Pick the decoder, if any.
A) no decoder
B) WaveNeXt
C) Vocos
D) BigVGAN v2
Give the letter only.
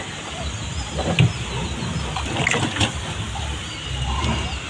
A